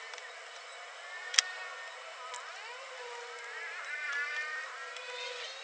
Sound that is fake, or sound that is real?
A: real